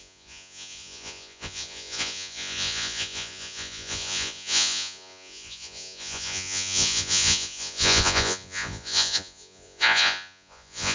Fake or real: fake